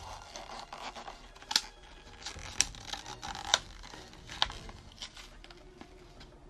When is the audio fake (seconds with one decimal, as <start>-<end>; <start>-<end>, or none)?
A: none